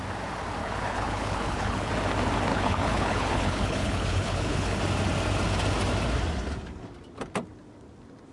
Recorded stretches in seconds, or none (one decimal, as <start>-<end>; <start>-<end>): 0.0-0.6; 1.9-2.5; 4.8-8.3

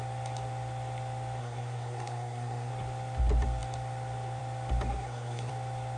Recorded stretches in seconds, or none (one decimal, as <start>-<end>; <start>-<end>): 0.0-1.4; 2.7-4.9; 5.5-6.0